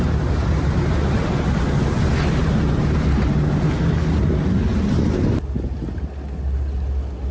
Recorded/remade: recorded